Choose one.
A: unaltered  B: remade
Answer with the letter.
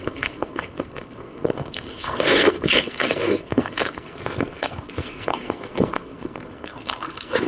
B